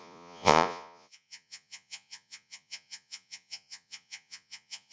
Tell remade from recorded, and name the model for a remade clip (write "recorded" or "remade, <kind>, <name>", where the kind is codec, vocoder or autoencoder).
remade, vocoder, Vocos